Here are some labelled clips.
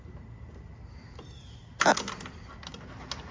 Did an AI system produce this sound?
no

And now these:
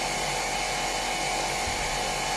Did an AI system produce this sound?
no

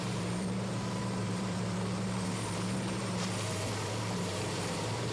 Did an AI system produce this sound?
yes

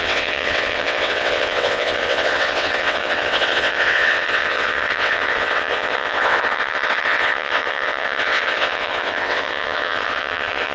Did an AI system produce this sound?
yes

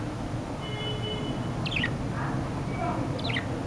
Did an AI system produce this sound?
no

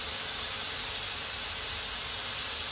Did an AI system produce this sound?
no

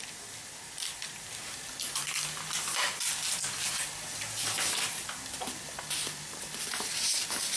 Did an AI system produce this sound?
no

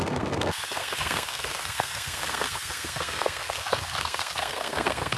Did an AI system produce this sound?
yes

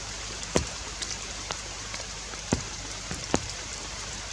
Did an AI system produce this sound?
yes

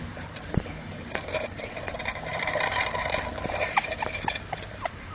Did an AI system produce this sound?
yes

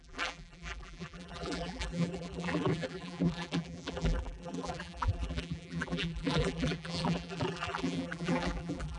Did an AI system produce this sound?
yes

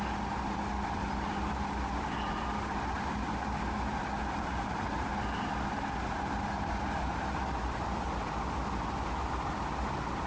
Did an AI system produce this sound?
no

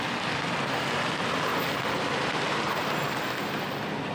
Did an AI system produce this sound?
yes